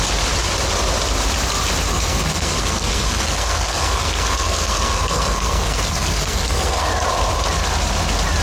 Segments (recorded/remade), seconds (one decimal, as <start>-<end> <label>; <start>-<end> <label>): 0.0-1.9 recorded; 1.9-6.9 remade; 6.9-8.4 recorded